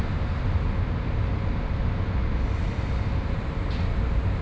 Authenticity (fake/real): real